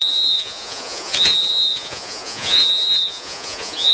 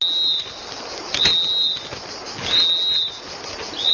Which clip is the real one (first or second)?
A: second